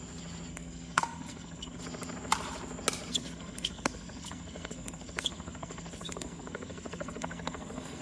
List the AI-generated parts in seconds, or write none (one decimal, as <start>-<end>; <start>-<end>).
0.5-1.8; 3.1-8.0